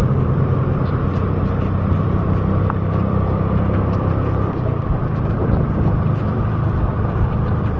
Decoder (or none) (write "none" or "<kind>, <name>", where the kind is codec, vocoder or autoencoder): vocoder, BigVGAN v2